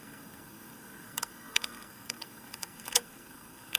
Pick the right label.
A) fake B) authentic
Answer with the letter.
A